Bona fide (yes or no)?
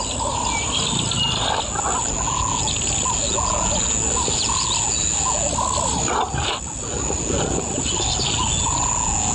yes